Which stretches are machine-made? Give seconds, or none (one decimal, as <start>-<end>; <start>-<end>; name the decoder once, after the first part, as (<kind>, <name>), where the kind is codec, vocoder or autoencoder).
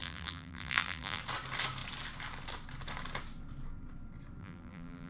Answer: 0.0-1.2 (vocoder, BigVGAN v2); 4.4-5.1